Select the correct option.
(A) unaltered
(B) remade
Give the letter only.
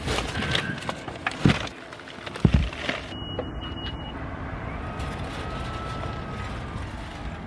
A